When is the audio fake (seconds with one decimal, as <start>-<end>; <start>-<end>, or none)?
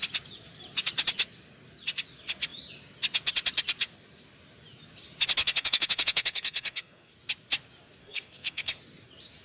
5.4-7.1; 8.0-8.8